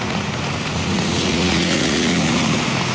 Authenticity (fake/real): fake